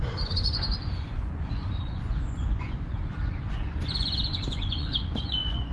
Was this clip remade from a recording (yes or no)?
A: yes